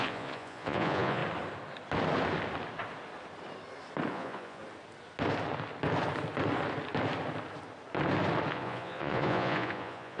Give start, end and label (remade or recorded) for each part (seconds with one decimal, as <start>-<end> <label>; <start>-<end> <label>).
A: 0.0-1.2 remade; 1.2-4.1 recorded; 4.1-4.6 remade; 4.6-8.5 recorded; 8.5-10.2 remade